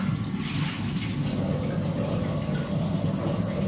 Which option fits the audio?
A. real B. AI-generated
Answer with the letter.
A